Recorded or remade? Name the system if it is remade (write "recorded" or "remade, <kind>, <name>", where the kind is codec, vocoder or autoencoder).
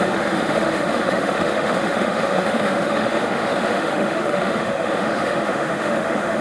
remade, autoencoder, DAC-VAE